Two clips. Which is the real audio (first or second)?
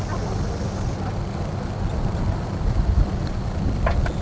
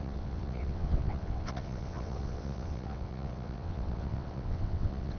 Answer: first